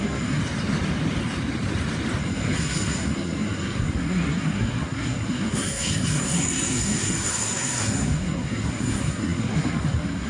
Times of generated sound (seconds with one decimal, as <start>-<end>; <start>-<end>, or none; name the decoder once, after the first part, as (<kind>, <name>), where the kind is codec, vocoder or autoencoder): 0.0-0.4 (codec, SNAC); 2.2-10.3